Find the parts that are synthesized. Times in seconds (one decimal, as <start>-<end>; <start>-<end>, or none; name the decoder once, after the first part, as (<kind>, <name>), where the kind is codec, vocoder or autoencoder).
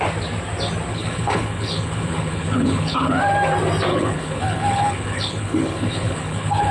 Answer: 0.9-3.2 (codec, HILCodec); 3.9-6.7